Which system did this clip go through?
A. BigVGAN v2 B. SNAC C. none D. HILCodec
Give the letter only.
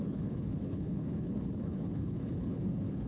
D